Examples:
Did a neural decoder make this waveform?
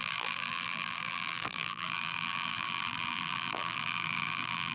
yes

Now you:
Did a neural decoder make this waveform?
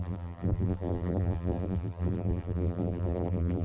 yes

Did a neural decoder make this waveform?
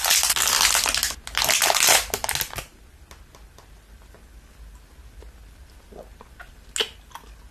no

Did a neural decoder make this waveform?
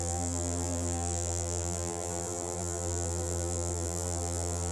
yes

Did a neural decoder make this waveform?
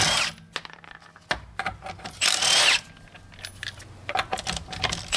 no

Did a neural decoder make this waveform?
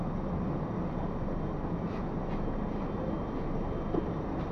no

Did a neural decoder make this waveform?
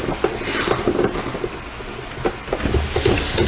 no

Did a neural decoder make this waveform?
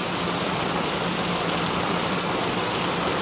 yes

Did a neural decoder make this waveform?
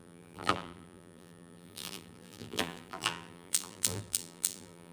yes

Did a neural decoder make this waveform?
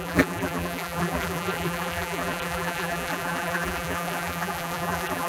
yes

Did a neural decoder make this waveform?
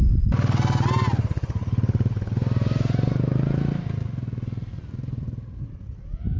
no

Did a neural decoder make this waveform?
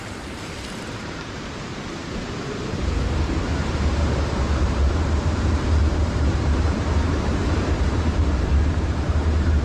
yes